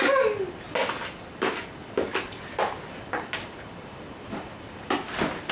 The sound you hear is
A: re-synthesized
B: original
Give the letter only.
B